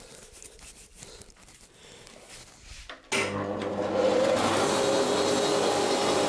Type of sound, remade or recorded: recorded